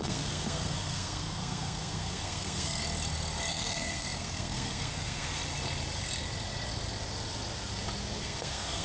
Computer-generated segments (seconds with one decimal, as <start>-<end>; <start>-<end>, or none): 0.0-2.8; 3.5-5.4; 8.2-8.8